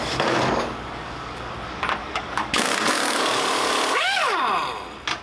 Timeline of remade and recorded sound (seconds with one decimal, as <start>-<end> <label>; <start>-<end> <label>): 0.0-1.5 remade; 1.5-2.0 recorded; 2.0-4.4 remade; 4.4-5.2 recorded